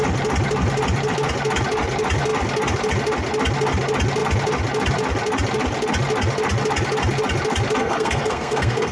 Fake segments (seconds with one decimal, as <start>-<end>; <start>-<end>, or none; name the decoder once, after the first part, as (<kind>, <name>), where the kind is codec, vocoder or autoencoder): 7.8-8.9 (codec, SNAC)